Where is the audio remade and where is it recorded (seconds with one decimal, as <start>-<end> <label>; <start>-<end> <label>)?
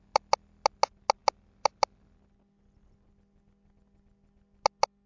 0.0-5.1 recorded